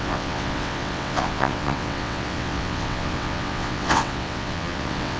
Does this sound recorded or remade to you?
remade